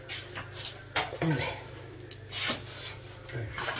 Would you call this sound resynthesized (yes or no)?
no